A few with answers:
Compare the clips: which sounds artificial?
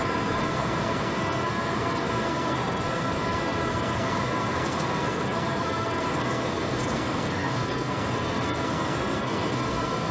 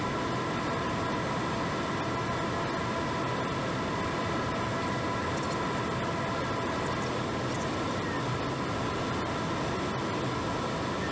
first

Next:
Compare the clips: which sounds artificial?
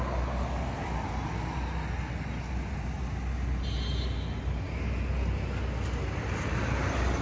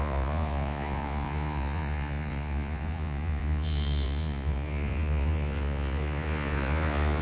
second